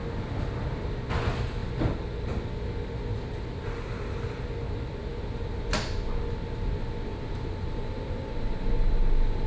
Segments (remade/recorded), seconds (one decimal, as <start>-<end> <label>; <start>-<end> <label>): 0.0-3.1 recorded; 3.1-3.6 remade; 3.6-7.1 recorded; 7.1-7.8 remade; 7.8-9.5 recorded